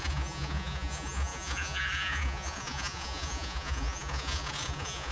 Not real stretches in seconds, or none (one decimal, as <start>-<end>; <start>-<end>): 0.0-5.1

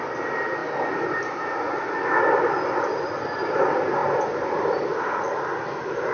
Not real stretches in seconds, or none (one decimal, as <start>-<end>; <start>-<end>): none

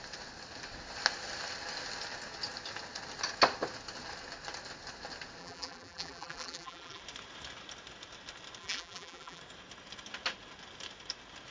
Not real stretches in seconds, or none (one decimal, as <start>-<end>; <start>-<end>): 5.4-7.0; 8.6-9.4

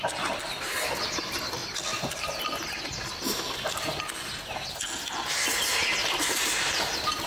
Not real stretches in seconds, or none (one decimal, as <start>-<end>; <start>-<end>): none

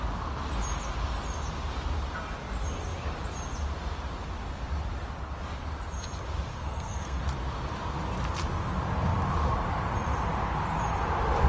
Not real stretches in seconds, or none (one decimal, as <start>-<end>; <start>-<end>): 6.5-7.2

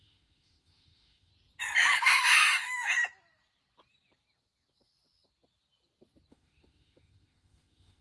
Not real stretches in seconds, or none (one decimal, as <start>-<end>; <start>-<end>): 0.0-1.3; 2.0-3.0; 6.3-8.0